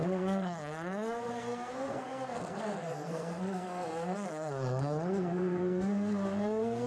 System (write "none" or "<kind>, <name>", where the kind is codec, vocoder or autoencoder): codec, SNAC